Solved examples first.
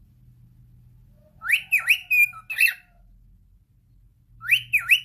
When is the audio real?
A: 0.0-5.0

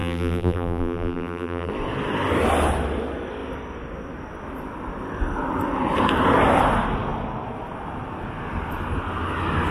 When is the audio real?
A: 1.7-9.7

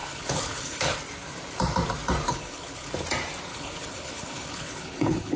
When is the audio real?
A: 1.0-2.3; 2.9-3.5

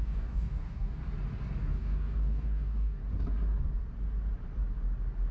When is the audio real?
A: 1.0-1.6; 3.0-5.3

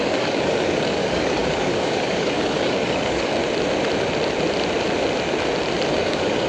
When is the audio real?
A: 3.4-5.9

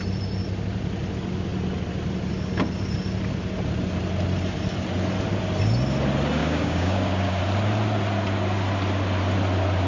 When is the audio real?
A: 0.0-6.4; 7.4-9.9

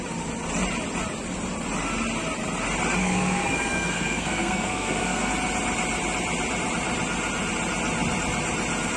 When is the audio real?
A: 0.0-3.0; 5.3-9.0

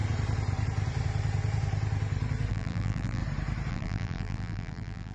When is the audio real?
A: 0.0-2.5; 3.2-3.7